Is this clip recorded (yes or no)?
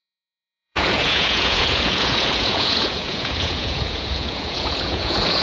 no